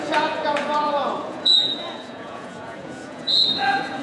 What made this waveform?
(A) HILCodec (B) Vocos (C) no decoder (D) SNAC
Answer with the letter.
B